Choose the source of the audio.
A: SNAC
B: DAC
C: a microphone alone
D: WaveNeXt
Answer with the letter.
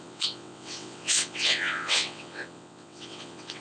D